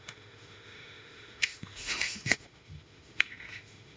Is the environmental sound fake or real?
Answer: fake